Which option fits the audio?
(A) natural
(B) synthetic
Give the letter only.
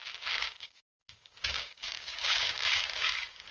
B